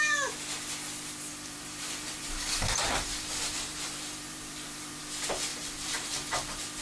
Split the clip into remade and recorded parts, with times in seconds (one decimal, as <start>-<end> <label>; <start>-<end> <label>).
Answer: 0.0-1.3 recorded; 1.3-5.0 remade; 5.0-5.5 recorded; 5.5-6.8 remade